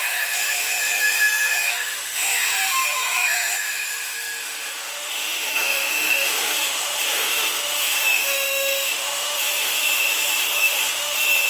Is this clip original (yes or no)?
no